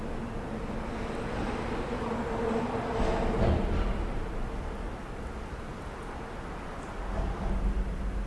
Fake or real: real